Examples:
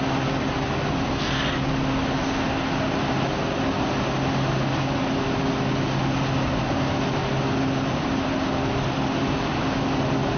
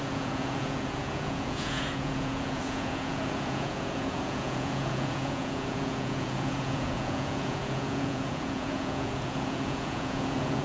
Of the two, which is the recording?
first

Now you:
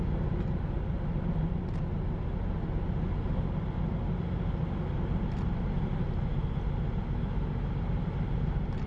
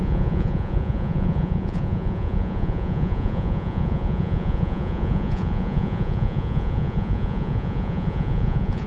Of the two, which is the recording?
first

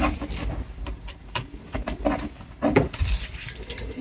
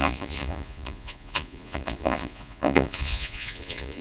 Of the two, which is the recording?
first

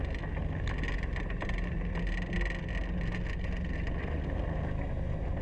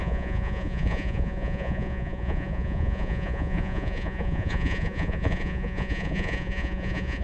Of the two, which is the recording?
first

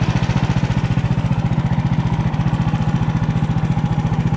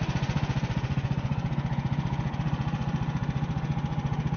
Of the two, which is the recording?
first